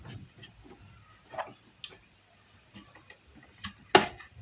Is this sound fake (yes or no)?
no